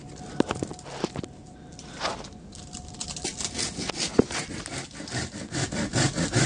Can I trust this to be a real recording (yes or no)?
yes